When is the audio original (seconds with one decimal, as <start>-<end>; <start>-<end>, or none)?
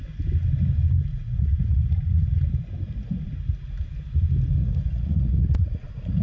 0.0-1.1; 2.2-4.6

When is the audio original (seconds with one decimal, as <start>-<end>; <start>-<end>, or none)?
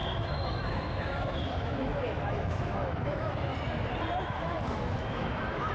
3.5-4.2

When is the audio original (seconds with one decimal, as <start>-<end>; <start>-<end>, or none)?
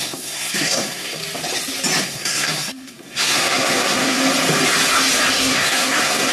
1.2-2.0; 4.2-5.3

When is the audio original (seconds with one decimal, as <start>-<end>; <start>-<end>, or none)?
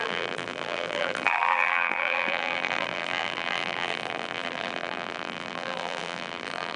none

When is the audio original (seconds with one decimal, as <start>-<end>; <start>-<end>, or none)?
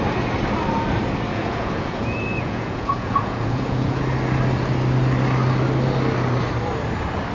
0.0-1.3; 4.0-7.3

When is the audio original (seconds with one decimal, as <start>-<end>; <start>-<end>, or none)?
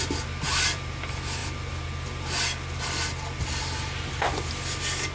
0.0-5.1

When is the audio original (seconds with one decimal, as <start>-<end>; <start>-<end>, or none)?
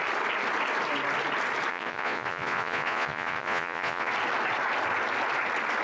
0.0-1.7; 4.1-5.8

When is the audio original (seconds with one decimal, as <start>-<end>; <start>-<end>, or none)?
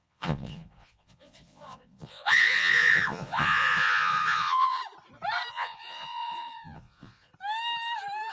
4.8-5.5; 7.3-8.3